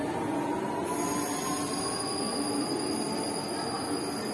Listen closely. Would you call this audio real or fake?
real